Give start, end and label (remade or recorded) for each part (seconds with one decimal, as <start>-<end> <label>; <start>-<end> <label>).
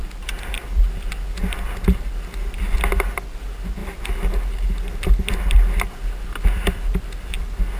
0.0-7.8 recorded